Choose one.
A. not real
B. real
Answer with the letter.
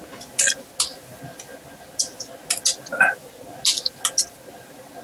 B